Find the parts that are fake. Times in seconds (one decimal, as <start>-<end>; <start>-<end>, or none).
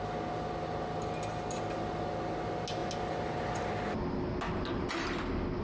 none